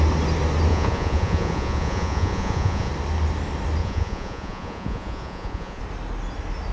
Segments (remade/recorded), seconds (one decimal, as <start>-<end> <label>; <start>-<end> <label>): 0.0-0.7 recorded; 0.7-2.9 remade; 2.9-3.8 recorded; 3.8-5.8 remade; 5.8-6.7 recorded